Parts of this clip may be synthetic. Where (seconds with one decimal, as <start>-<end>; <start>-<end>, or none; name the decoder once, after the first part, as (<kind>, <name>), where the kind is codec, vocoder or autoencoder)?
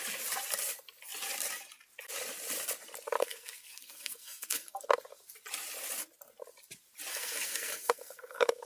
3.2-4.7 (codec, SNAC); 7.1-8.6